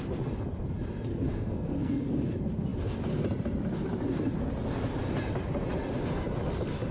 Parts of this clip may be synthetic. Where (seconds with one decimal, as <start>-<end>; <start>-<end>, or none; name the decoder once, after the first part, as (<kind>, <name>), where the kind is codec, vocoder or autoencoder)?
1.1-2.3 (codec, SNAC)